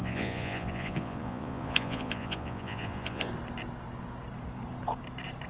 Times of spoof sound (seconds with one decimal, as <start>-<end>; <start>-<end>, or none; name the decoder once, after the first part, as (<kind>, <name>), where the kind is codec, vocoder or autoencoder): 0.0-3.3 (vocoder, Vocos)